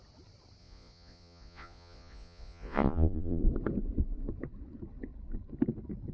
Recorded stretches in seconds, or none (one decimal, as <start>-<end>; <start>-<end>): 0.0-0.6; 3.4-6.1